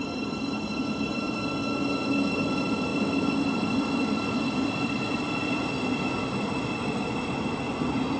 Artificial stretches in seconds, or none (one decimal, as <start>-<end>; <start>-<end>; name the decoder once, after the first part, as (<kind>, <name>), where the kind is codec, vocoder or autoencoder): none